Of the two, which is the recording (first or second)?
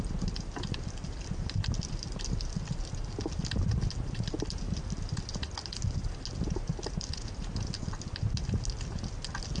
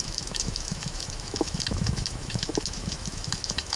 first